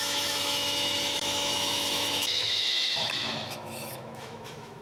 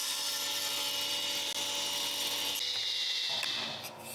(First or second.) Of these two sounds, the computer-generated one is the first